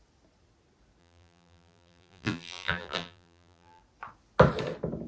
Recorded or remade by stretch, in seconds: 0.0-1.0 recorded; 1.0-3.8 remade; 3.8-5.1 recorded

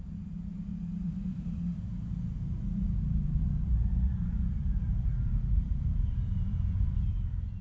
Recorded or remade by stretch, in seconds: 0.0-7.6 remade

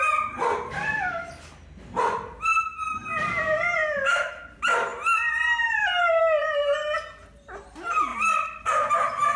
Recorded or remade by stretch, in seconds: 0.0-2.5 recorded; 2.5-4.4 remade; 4.4-4.9 recorded; 4.9-6.2 remade; 6.2-8.1 recorded; 8.1-8.9 remade; 8.9-9.4 recorded